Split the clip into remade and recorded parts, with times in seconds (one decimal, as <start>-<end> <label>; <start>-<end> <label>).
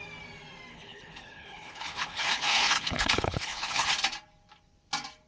0.0-0.7 recorded; 0.7-3.9 remade; 3.9-5.3 recorded